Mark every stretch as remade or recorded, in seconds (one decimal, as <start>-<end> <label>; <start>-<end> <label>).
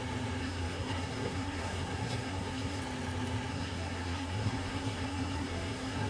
0.0-0.4 recorded; 0.4-2.8 remade; 2.8-3.5 recorded; 3.5-6.1 remade